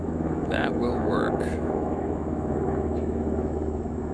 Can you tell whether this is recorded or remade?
remade